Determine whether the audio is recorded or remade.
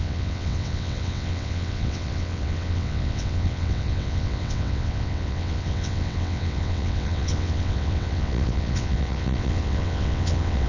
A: remade